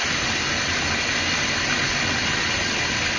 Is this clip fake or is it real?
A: real